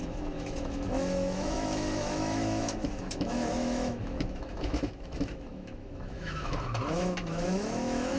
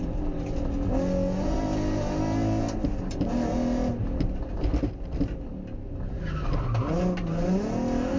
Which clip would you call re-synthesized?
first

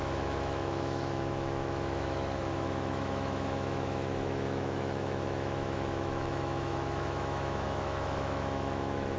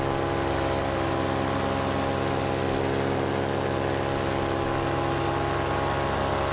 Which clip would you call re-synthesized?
first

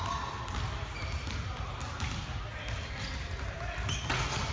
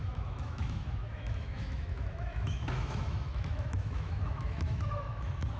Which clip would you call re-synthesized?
second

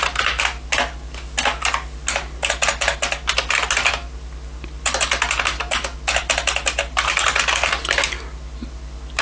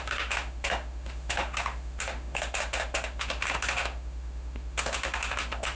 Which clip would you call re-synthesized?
second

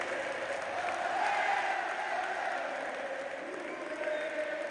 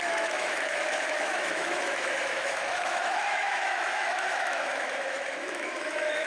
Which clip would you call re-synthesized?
second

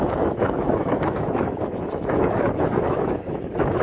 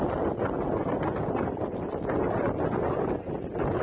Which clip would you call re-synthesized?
first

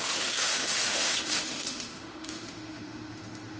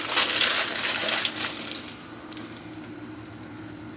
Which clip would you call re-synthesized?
first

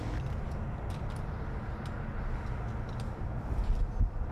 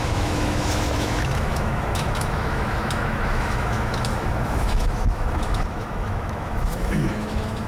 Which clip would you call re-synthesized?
second